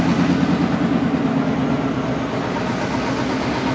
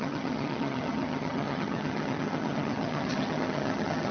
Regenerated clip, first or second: second